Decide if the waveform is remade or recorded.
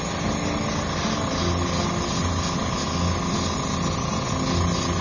recorded